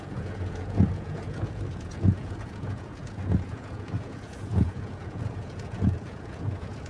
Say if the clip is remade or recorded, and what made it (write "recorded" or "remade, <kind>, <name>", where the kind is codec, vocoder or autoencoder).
remade, vocoder, Vocos